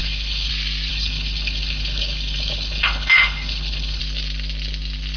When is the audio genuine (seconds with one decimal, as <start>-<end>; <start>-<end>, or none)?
0.5-0.9; 4.0-5.2